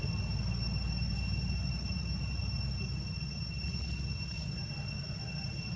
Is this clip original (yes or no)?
yes